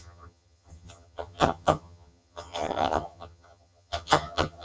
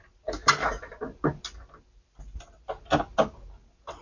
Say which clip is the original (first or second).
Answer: second